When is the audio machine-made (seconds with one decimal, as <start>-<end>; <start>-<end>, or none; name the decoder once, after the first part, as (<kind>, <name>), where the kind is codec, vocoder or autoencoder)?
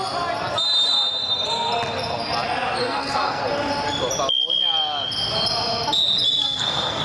2.8-3.4 (codec, SNAC); 6.4-7.0